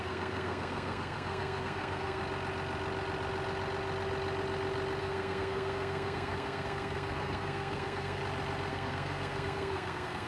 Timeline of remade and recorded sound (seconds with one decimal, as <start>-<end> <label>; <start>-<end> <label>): 0.0-2.2 remade; 2.2-5.0 recorded; 5.0-8.2 remade; 8.2-8.7 recorded; 8.7-10.3 remade